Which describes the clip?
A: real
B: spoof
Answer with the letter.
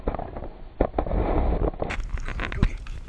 A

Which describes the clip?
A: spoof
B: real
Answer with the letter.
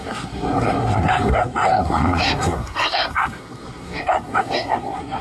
A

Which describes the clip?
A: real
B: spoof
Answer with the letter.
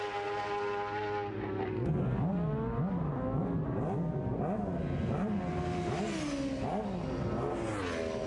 A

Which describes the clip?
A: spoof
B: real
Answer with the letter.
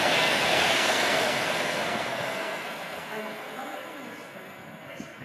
A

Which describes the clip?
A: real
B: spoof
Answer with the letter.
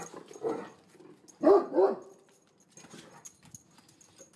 A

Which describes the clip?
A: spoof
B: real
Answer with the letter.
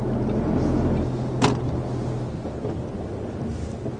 B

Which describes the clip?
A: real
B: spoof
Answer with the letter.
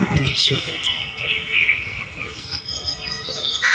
B